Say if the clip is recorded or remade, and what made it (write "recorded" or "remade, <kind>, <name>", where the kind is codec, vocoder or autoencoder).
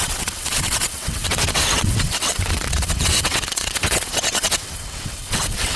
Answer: remade, vocoder, WaveNeXt